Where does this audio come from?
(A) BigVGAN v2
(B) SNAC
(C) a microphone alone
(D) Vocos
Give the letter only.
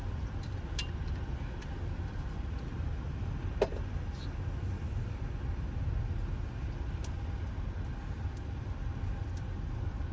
C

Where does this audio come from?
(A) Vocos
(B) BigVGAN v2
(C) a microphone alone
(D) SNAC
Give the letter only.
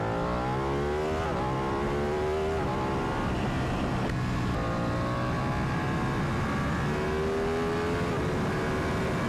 C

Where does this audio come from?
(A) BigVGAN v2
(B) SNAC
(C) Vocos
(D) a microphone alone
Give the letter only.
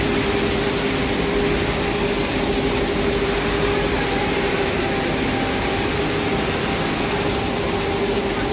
D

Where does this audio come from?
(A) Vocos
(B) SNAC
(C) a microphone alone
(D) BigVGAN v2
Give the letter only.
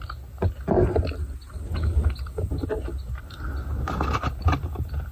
C